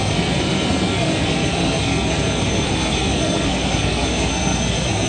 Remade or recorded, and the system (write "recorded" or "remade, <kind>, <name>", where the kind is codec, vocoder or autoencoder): remade, codec, SNAC